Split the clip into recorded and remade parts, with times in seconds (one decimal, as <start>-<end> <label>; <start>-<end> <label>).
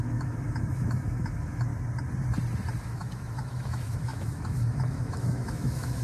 0.0-1.7 remade; 1.7-2.8 recorded; 2.8-6.0 remade